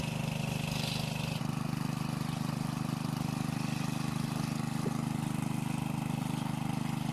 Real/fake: real